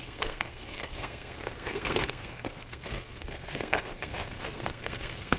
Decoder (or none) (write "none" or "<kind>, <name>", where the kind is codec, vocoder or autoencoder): codec, SNAC